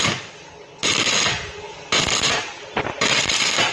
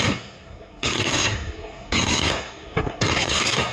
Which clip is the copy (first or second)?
second